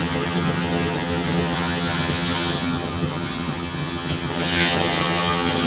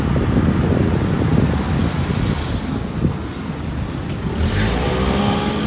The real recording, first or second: second